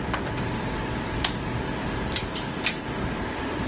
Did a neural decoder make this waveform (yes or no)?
no